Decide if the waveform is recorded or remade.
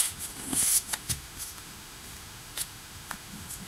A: remade